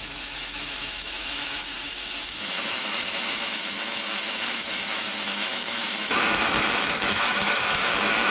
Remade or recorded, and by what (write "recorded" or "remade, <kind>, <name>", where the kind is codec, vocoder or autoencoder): remade, autoencoder, DAC-VAE